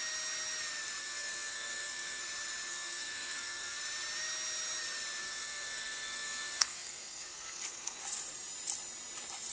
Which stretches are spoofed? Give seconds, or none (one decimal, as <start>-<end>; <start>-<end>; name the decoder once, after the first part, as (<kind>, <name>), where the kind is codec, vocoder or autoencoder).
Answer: 1.0-2.2 (codec, SNAC); 2.7-3.8; 5.2-8.0